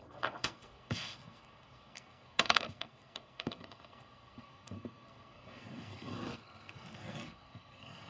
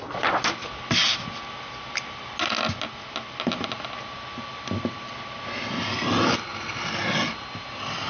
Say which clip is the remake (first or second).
first